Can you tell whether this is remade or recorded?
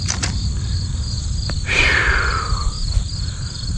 remade